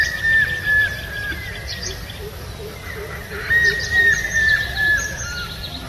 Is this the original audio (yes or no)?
yes